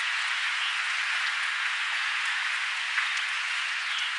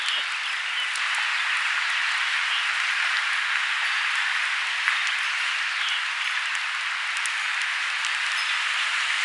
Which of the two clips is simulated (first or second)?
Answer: first